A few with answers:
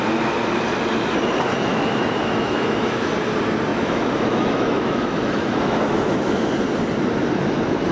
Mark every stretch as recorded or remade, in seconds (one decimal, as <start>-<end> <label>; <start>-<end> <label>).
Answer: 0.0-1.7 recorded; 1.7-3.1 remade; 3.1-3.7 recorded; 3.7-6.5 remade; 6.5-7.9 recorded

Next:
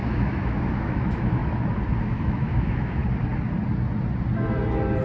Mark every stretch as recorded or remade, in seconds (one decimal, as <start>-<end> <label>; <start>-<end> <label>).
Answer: 0.0-1.4 remade; 1.4-2.0 recorded; 2.0-3.0 remade; 3.0-5.0 recorded

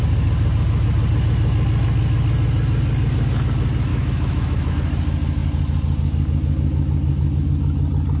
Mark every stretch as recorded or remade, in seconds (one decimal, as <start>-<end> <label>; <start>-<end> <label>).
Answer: 0.0-3.9 recorded; 3.9-4.7 remade; 4.7-8.2 recorded